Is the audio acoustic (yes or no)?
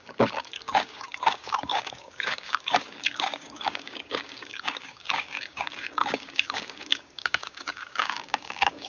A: no